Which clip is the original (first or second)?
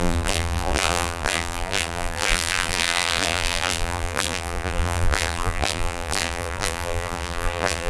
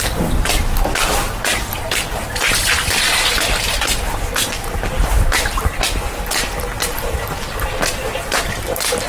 second